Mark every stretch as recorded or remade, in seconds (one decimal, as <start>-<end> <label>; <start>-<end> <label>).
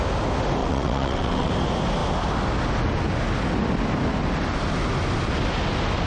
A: 0.0-0.6 recorded; 0.6-1.5 remade; 1.5-6.1 recorded